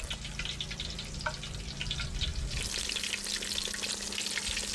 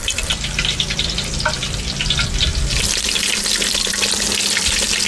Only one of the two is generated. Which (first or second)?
second